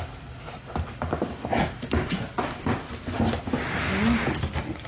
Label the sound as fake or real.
real